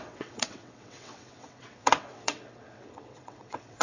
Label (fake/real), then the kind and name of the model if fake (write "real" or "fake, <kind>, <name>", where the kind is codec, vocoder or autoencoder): fake, vocoder, WaveNeXt